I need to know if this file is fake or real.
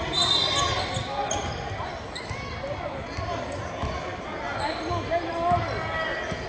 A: real